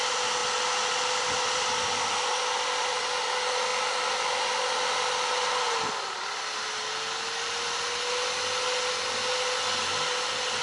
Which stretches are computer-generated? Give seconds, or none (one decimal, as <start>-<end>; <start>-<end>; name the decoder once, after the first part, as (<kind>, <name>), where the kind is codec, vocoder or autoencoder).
none